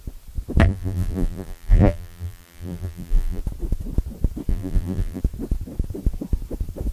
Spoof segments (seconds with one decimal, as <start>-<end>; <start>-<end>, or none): 0.6-3.4; 4.5-5.2